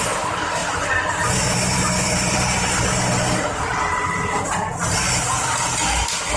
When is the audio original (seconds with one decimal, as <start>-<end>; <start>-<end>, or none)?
0.0-0.6; 4.0-6.4